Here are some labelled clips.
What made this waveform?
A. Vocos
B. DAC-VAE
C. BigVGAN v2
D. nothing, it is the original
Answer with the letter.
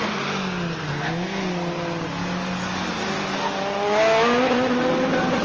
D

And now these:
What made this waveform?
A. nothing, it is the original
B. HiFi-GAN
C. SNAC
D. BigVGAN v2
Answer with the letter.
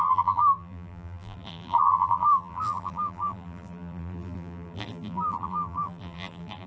D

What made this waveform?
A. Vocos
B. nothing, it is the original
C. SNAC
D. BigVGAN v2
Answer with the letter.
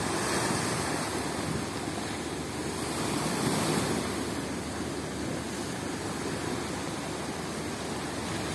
B